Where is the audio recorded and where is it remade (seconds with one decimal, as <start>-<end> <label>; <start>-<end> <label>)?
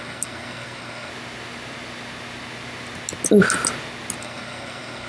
0.0-1.1 remade; 1.1-4.2 recorded; 4.2-5.1 remade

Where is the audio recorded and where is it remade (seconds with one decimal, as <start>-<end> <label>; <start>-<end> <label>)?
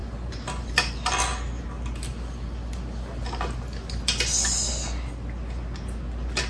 0.0-6.5 recorded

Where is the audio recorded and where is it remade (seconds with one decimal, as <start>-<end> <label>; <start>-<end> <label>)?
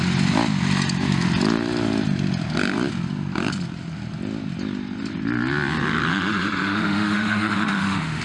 0.0-6.1 recorded; 6.1-8.2 remade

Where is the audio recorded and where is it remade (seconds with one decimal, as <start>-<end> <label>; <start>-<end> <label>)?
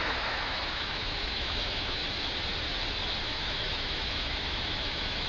0.0-2.0 remade; 2.0-3.2 recorded; 3.2-5.3 remade